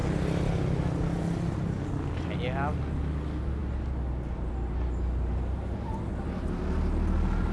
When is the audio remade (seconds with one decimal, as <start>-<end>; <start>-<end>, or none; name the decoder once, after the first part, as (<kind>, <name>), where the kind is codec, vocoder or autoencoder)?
none

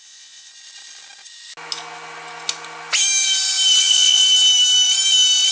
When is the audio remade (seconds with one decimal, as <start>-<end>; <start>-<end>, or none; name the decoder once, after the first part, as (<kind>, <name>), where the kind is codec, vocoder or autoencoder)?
0.0-0.5 (vocoder, Vocos); 3.8-4.2